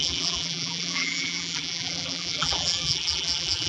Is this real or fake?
fake